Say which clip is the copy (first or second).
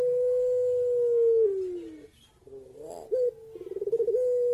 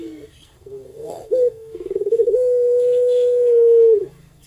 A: second